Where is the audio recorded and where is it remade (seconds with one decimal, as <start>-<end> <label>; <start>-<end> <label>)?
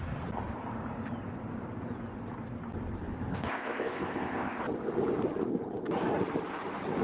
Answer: 0.0-3.3 recorded; 3.3-4.6 remade; 4.6-7.0 recorded